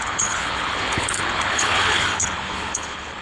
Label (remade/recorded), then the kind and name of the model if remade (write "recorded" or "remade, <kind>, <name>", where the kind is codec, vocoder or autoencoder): remade, codec, HILCodec